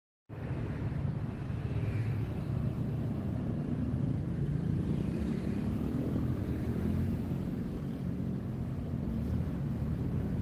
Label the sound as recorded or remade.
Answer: remade